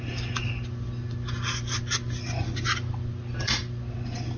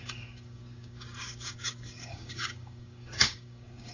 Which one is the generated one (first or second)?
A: second